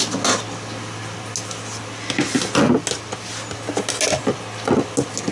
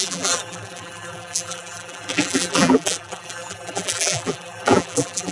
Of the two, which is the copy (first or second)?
second